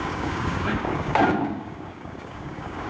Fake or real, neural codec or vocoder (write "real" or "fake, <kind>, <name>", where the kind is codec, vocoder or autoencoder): fake, codec, DAC